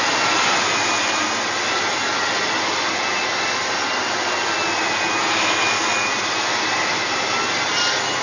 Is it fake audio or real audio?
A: real